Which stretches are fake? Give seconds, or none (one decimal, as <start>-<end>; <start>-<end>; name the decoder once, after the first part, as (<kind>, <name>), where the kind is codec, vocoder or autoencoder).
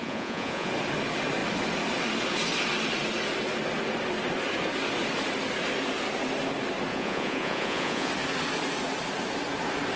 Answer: 0.0-0.7 (vocoder, Vocos); 6.9-8.1